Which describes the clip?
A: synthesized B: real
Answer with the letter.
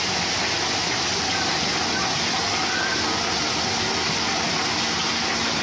B